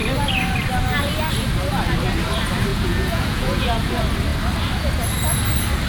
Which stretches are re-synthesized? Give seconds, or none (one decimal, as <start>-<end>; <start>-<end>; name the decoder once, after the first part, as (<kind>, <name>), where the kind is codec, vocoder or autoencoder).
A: 2.7-3.9 (vocoder, Vocos)